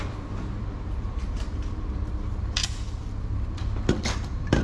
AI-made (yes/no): yes